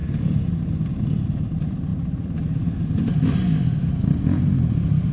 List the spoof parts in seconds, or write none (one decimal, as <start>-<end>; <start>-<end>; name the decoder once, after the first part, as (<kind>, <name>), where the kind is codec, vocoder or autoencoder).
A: 0.0-0.6 (vocoder, BigVGAN v2); 1.9-5.1